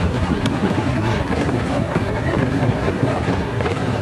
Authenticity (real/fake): fake